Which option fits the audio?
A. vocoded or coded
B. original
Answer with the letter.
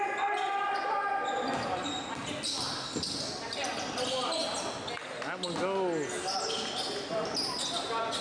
B